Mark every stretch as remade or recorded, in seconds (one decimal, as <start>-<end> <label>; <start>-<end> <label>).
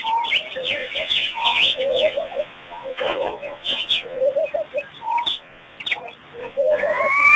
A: 0.0-0.8 recorded; 0.8-4.2 remade; 4.2-5.3 recorded; 5.3-5.8 remade; 5.8-6.4 recorded; 6.4-7.0 remade; 7.0-7.4 recorded